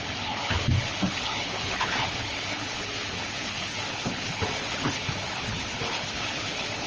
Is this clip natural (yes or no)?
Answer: no